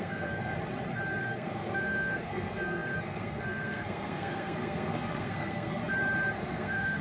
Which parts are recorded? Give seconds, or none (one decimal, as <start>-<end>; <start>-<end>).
0.5-1.2; 5.8-6.4